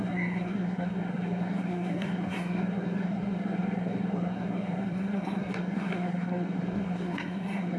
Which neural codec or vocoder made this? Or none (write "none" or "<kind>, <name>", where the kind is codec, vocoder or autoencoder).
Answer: codec, SNAC